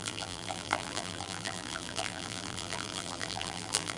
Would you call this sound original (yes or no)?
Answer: no